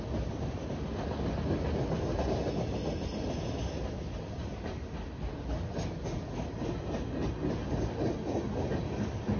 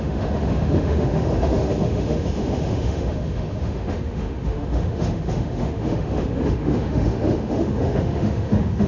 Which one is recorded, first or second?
first